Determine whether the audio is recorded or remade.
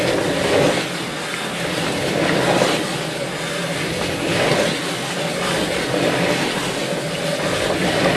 recorded